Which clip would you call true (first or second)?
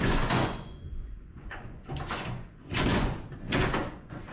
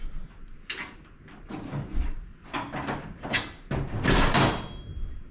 second